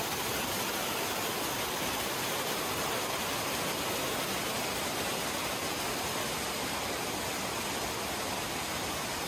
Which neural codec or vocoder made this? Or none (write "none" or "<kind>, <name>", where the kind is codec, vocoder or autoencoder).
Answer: none